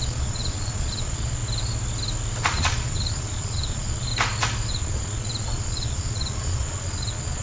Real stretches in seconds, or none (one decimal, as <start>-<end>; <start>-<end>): 1.4-2.4; 4.1-4.7